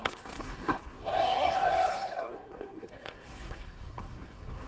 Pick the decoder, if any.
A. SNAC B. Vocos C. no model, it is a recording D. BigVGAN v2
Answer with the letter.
A